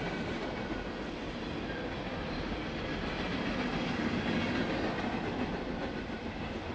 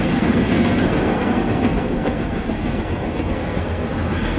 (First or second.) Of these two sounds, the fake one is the second